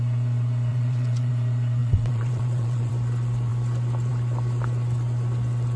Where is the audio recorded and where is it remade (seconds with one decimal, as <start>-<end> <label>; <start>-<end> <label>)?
0.0-0.7 recorded; 0.7-1.3 remade; 1.3-1.8 recorded; 1.8-2.9 remade; 2.9-5.8 recorded